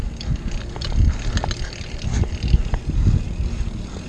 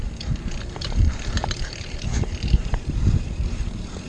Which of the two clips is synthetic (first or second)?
second